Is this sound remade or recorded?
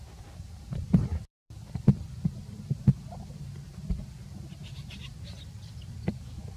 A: remade